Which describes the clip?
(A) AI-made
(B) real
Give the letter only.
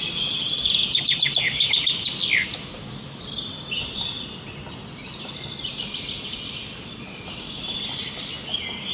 B